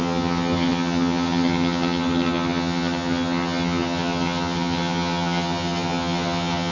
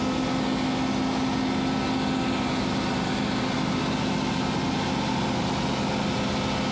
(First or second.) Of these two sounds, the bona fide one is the second